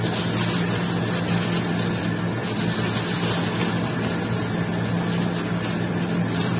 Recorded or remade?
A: recorded